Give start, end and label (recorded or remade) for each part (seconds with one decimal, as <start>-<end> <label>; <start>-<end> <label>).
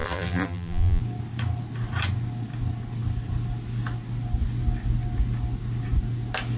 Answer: 0.0-1.0 remade; 1.0-6.6 recorded